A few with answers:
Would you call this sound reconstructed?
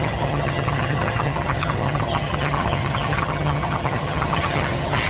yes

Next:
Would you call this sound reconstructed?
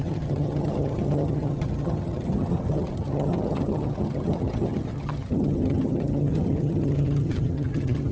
yes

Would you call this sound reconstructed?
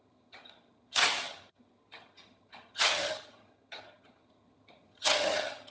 yes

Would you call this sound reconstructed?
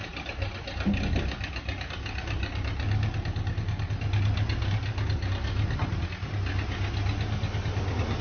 no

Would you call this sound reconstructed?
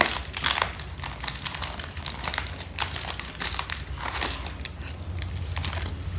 no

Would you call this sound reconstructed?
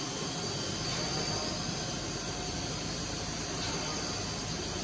no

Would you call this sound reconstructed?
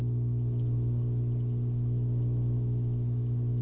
no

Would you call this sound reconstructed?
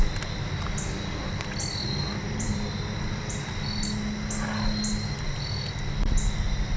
no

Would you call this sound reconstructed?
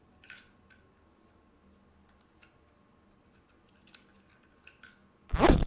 no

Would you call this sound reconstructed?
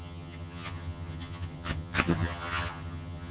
yes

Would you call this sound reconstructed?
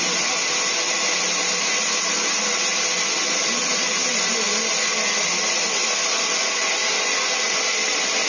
no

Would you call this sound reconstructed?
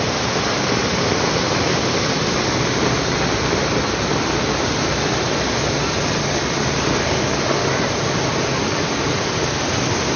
no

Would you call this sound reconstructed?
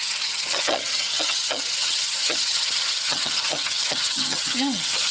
yes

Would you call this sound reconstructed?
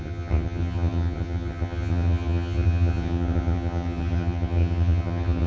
yes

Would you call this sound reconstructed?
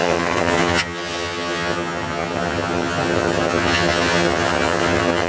yes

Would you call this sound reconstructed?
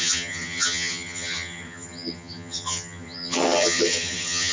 yes